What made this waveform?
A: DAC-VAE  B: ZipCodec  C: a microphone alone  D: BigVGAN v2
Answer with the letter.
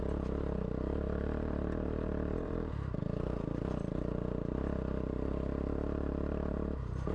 D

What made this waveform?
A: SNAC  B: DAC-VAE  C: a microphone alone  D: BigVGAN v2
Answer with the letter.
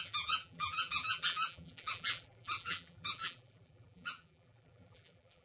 D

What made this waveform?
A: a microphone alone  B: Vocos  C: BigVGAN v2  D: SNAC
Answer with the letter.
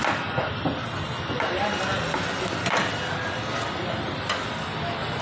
A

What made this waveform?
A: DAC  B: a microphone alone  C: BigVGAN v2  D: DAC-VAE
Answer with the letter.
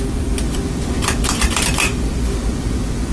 C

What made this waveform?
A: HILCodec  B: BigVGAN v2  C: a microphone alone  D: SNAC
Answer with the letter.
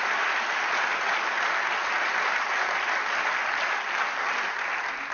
C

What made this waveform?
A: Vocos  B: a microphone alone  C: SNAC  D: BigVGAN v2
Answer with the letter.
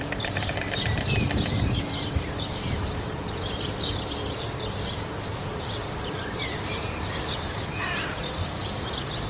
D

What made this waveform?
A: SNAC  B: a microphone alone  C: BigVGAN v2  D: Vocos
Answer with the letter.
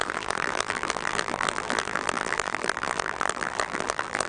C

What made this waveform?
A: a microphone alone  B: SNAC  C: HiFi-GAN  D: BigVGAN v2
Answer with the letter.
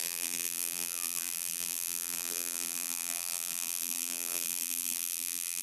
D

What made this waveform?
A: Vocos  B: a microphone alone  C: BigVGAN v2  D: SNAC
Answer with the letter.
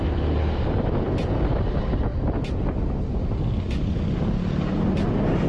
B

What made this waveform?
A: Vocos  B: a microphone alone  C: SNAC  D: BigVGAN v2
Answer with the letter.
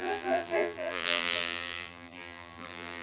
D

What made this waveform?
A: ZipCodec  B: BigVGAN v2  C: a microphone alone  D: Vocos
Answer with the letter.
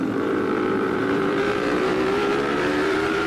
B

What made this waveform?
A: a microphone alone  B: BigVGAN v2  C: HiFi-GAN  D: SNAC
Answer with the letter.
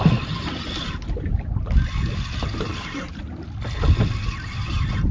A